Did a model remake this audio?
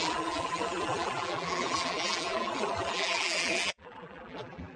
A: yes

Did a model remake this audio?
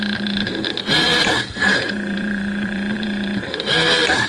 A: yes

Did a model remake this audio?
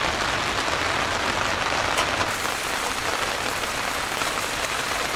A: no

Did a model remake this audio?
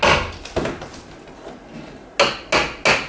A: no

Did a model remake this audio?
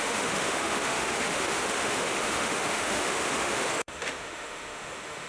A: yes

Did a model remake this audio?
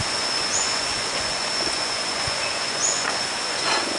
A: yes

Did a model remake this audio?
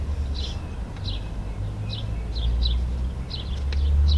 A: no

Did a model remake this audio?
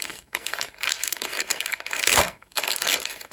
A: yes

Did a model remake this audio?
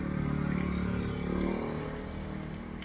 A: no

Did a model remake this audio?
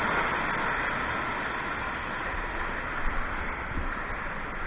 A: no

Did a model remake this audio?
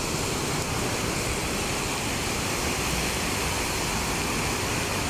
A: no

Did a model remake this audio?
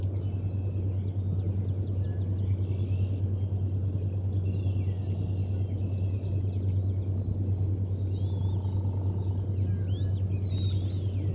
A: no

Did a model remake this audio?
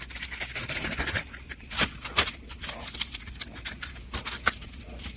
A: no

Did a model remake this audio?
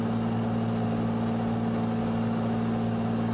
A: no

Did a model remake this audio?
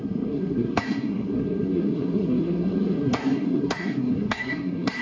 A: yes